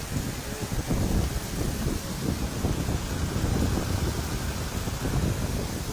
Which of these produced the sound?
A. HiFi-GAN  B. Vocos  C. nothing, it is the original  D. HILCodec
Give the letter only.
C